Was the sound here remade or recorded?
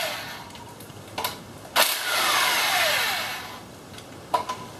remade